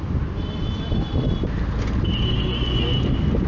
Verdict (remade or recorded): recorded